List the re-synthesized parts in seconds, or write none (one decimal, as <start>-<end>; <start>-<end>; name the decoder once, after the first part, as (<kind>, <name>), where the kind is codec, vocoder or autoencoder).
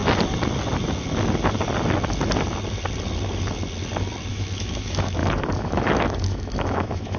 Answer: 4.3-7.2 (autoencoder, DAC-VAE)